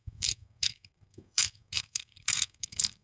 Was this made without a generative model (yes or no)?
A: no